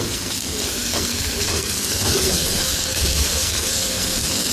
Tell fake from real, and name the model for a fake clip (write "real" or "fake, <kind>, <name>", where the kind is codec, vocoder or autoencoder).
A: fake, codec, SNAC